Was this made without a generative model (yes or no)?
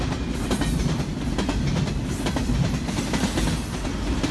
yes